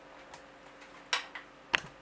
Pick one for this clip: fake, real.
real